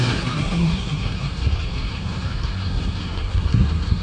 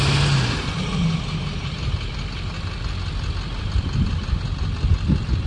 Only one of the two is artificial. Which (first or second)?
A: first